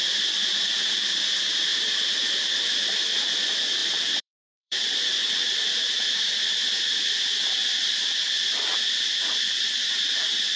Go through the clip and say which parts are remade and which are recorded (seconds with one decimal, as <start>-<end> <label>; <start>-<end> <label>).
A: 0.0-1.7 recorded; 1.7-3.1 remade; 3.1-3.8 recorded; 3.8-6.2 remade; 6.2-7.6 recorded; 7.6-8.2 remade; 8.2-10.6 recorded